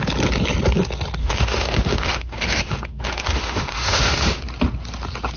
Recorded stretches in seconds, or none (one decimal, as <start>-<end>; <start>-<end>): 0.0-1.2; 4.4-5.4